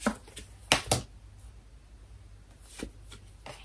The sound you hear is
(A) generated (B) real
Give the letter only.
B